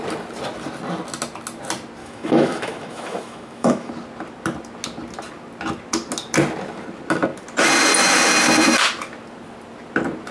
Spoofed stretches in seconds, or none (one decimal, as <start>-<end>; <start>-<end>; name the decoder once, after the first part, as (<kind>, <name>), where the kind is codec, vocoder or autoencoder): 2.0-3.9 (autoencoder, DAC-VAE)